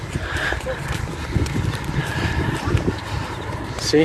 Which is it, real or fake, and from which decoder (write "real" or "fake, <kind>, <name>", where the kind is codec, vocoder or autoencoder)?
real